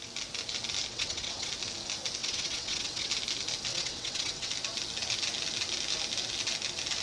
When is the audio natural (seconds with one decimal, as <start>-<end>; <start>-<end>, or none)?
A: 0.0-0.9; 1.5-2.2; 3.1-3.7; 4.5-7.0